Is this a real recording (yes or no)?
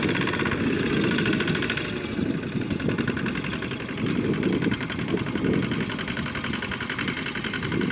yes